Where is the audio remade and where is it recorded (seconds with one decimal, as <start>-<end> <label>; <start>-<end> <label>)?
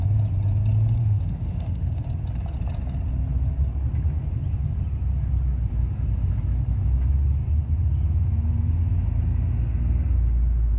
0.0-1.0 recorded; 1.0-2.0 remade; 2.0-10.8 recorded